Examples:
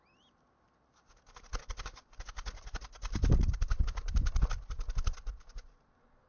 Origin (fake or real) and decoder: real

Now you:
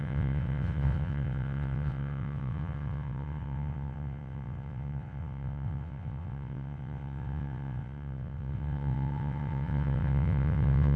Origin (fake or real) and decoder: fake, vocoder, WaveNeXt